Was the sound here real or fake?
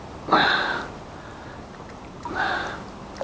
real